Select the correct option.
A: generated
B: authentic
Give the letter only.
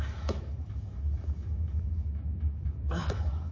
A